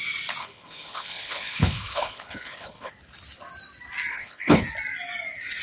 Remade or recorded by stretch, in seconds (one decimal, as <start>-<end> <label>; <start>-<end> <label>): 0.0-0.4 recorded; 0.4-2.9 remade; 2.9-4.1 recorded; 4.1-4.6 remade; 4.6-5.6 recorded